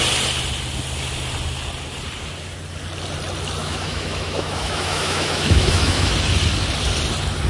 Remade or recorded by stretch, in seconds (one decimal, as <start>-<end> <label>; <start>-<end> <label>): 0.0-3.6 recorded; 3.6-6.1 remade; 6.1-7.5 recorded